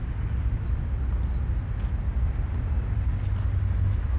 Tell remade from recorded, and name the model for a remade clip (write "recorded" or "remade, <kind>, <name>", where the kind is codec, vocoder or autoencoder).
recorded